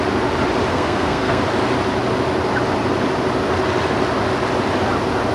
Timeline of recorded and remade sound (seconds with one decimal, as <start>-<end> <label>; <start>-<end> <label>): 0.0-0.7 recorded; 0.7-1.4 remade; 1.4-5.3 recorded